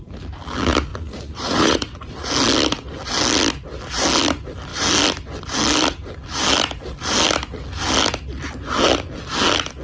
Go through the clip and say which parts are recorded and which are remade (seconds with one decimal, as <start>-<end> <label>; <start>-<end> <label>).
0.0-0.9 recorded; 0.9-2.3 remade; 2.3-9.8 recorded